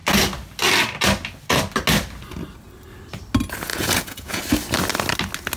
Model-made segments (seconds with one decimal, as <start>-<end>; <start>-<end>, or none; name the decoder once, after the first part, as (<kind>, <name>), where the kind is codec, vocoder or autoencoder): 3.7-4.4 (vocoder, Vocos)